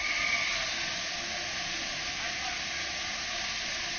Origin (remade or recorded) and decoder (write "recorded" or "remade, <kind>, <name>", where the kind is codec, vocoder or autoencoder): recorded